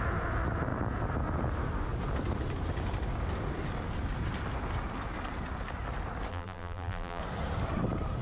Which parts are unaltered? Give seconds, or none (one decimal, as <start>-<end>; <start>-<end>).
0.0-6.3; 7.2-8.2

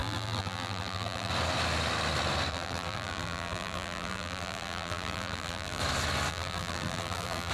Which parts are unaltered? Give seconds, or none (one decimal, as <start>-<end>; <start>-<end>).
1.3-2.5; 5.8-6.3

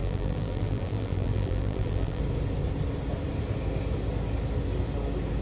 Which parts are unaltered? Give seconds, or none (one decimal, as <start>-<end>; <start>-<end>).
2.2-5.4

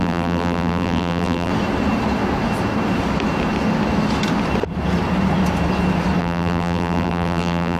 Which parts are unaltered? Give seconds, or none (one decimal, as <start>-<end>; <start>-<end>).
1.5-6.2

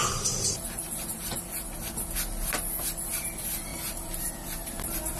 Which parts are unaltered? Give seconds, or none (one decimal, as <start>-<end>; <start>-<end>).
1.7-3.7; 4.3-5.2